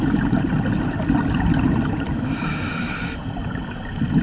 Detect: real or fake fake